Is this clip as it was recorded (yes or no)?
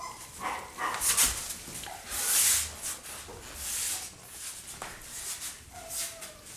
yes